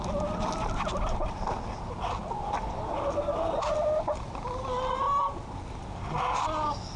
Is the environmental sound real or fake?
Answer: real